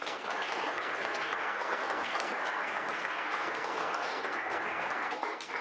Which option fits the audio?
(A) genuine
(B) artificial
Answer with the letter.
B